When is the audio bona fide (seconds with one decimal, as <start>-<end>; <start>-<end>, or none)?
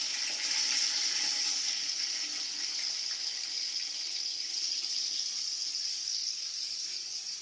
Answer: 0.0-5.9